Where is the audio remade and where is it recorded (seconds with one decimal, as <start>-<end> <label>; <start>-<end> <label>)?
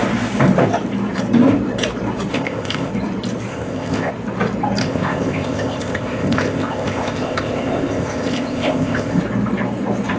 0.0-2.3 recorded; 2.3-2.9 remade; 2.9-3.5 recorded; 3.5-4.1 remade; 4.1-4.8 recorded; 4.8-9.2 remade; 9.2-10.2 recorded